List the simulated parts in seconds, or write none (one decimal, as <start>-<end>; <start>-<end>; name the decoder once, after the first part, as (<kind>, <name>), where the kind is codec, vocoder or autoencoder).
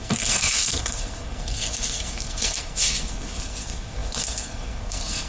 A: 0.0-5.3 (codec, SNAC)